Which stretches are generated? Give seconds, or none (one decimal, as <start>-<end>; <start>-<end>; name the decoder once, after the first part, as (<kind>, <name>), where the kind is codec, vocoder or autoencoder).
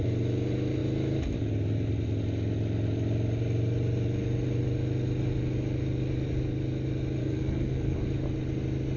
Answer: 7.2-8.0 (codec, SNAC)